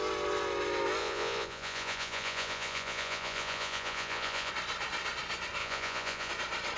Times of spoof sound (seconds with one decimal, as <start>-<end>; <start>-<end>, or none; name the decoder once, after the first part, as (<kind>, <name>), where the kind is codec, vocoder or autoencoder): 1.0-4.5 (vocoder, Vocos); 5.6-6.3